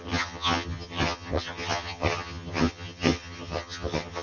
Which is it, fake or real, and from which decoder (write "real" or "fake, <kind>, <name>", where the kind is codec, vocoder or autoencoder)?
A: fake, vocoder, HiFi-GAN